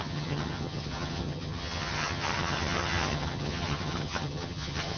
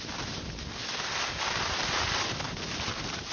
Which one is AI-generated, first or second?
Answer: first